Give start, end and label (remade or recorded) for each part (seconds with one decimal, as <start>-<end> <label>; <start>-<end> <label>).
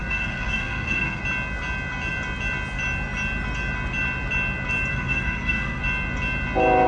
0.0-1.2 remade; 1.2-4.9 recorded; 4.9-5.8 remade; 5.8-6.9 recorded